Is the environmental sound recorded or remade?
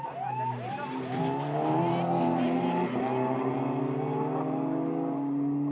recorded